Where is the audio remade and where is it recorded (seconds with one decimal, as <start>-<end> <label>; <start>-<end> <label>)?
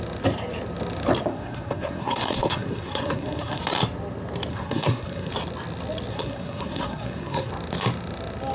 0.0-1.3 recorded; 1.3-3.6 remade; 3.6-4.5 recorded; 4.5-5.3 remade; 5.3-6.1 recorded; 6.1-7.5 remade; 7.5-8.5 recorded